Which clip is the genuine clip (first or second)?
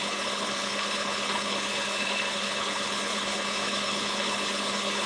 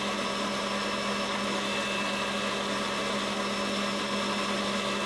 second